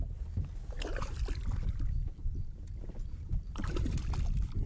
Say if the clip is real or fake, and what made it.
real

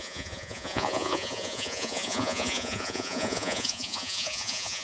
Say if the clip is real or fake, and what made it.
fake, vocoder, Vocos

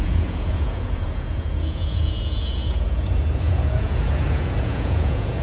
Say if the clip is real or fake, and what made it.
fake, vocoder, Vocos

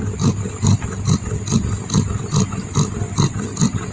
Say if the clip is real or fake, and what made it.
real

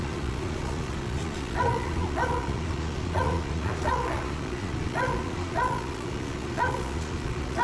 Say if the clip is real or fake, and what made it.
fake, vocoder, Vocos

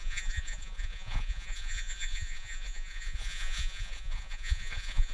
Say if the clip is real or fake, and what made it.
fake, vocoder, Vocos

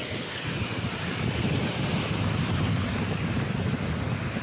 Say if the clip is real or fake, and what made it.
real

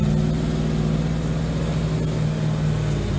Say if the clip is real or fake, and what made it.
real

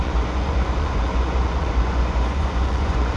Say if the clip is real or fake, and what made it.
fake, vocoder, Vocos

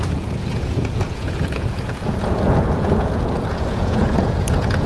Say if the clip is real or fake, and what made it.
fake, vocoder, Vocos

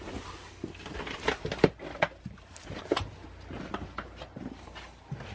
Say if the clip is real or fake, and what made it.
real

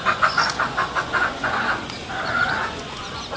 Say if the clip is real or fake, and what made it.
fake, vocoder, Vocos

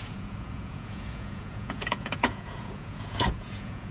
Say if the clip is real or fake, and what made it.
fake, vocoder, Vocos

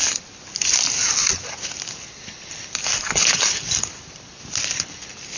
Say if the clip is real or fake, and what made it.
real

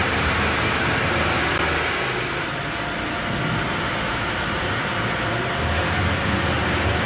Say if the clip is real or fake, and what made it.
real